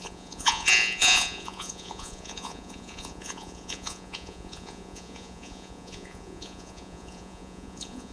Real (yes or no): no